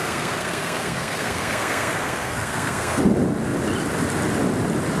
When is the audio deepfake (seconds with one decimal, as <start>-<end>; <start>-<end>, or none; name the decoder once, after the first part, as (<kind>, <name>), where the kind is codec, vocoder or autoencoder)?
0.0-3.0 (codec, SNAC)